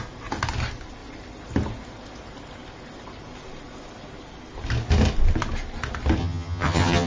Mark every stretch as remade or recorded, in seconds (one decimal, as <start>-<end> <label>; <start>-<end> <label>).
0.0-6.2 recorded; 6.2-7.1 remade